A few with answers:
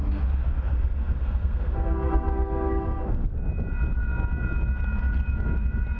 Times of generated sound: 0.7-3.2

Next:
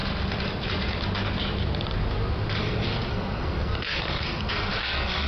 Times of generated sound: 2.6-5.3

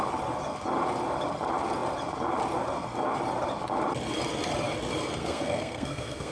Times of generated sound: 5.2-6.3

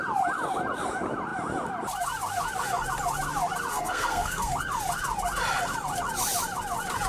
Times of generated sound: 3.7-4.5

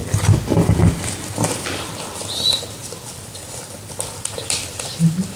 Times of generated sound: none

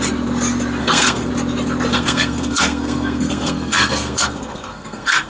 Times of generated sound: 0.8-1.3; 1.9-5.3

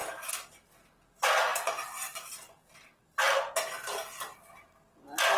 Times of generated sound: none